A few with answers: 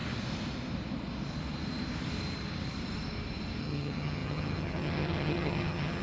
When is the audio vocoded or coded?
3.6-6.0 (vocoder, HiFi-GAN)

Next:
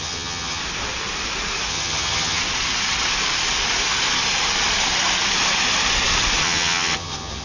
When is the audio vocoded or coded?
0.0-0.6 (vocoder, HiFi-GAN); 1.7-2.4; 6.4-7.4

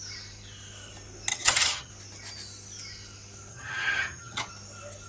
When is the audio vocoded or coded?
1.3-1.9 (vocoder, HiFi-GAN); 3.5-4.5

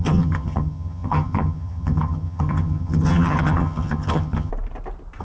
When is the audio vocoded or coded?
0.0-4.5 (vocoder, HiFi-GAN)

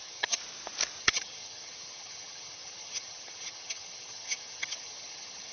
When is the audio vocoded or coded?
0.0-0.4 (vocoder, HiFi-GAN); 1.0-5.5

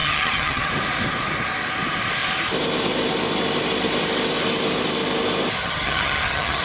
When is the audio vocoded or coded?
0.0-0.7 (vocoder, HiFi-GAN); 5.6-6.6

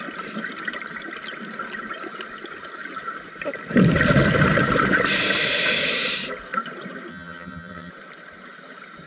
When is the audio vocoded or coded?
7.1-7.9 (vocoder, HiFi-GAN)